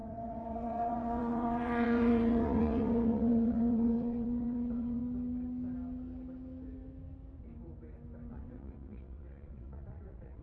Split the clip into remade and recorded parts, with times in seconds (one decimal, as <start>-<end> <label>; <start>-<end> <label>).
0.0-5.0 remade; 5.0-8.3 recorded; 8.3-10.4 remade